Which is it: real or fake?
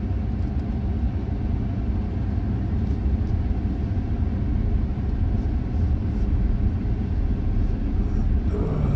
real